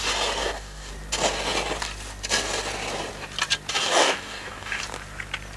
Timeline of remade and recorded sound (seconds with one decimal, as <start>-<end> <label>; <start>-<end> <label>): 0.0-0.4 recorded; 0.4-0.9 remade; 0.9-3.8 recorded; 3.8-4.8 remade; 4.8-5.6 recorded